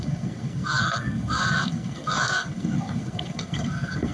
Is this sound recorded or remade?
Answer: remade